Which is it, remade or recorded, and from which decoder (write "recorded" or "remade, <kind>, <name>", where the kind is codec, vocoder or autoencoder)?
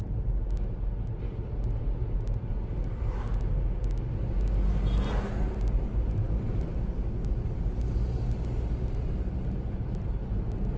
recorded